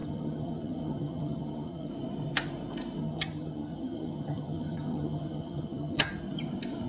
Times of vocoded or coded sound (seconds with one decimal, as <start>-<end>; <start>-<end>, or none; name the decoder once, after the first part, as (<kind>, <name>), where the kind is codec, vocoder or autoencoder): 0.0-1.9 (vocoder, HiFi-GAN); 3.0-6.1